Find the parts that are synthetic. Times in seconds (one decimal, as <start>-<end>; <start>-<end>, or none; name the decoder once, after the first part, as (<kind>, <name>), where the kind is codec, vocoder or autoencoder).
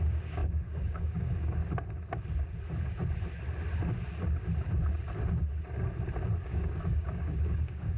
0.0-1.6 (codec, DAC); 6.4-8.0